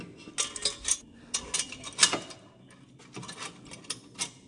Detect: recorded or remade recorded